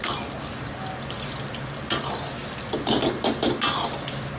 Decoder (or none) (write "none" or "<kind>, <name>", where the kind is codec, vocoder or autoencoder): none